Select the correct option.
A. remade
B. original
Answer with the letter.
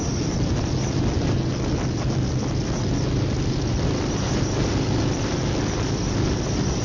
B